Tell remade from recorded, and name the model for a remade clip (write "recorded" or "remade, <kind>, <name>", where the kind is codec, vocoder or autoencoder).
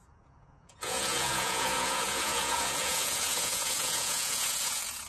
remade, vocoder, Vocos